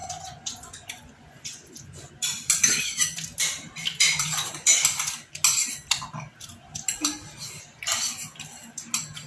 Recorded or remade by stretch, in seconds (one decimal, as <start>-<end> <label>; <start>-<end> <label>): 0.0-2.1 remade; 2.1-9.3 recorded